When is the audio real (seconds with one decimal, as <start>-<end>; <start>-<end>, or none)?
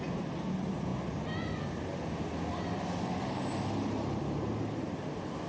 0.0-5.5